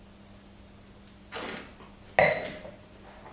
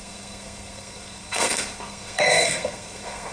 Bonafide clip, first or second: first